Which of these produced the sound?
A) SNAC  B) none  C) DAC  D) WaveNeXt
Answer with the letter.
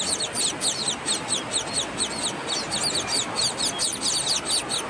B